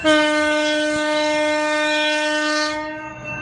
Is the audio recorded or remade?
remade